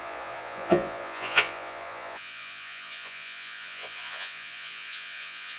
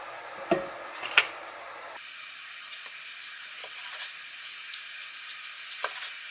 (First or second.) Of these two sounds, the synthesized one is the first